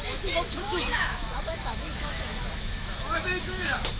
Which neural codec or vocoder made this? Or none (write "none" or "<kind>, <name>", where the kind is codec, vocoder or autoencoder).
autoencoder, DAC-VAE